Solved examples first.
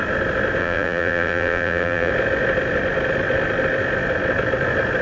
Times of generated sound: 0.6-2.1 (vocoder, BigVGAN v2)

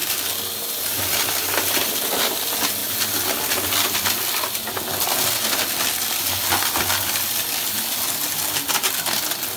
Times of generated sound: none

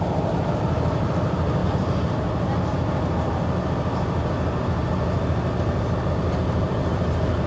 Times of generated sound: 0.0-1.6 (vocoder, BigVGAN v2); 6.1-7.5

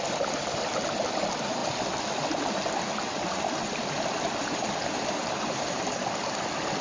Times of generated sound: none

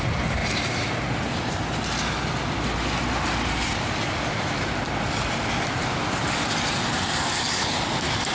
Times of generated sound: 0.4-1.2 (vocoder, BigVGAN v2)

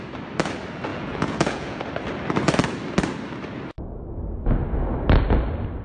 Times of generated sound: 0.9-1.8 (vocoder, Vocos)

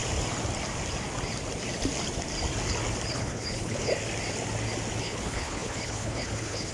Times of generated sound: 3.1-3.9 (codec, HILCodec); 5.0-6.7